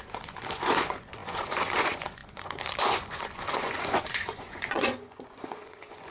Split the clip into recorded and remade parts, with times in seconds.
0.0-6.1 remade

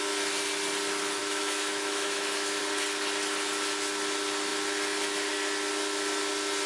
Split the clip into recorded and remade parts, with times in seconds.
0.0-1.2 recorded; 1.2-2.6 remade; 2.6-6.7 recorded

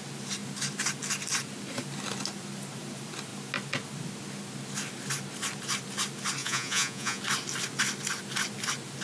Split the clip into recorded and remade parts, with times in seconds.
0.0-6.4 recorded; 6.4-7.2 remade; 7.2-9.0 recorded

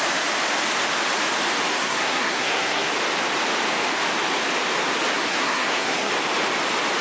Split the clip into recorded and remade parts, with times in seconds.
0.0-1.7 recorded; 1.7-2.9 remade; 2.9-5.1 recorded; 5.1-6.1 remade; 6.1-7.0 recorded

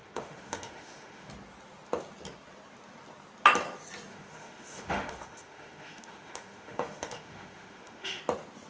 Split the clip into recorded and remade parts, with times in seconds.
0.0-1.3 remade; 1.3-4.1 recorded; 4.1-8.2 remade; 8.2-8.7 recorded

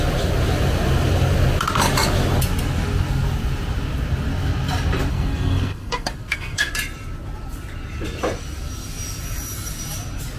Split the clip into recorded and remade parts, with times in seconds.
0.0-5.1 recorded; 5.1-6.7 remade; 6.7-10.4 recorded

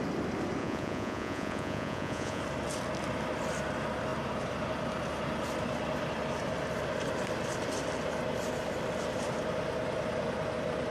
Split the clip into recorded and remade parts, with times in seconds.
0.0-0.6 recorded; 0.6-2.4 remade; 2.4-10.9 recorded